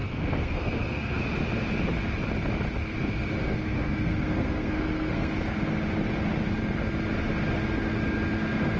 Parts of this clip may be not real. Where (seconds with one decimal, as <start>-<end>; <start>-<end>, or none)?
0.0-1.2; 3.4-5.3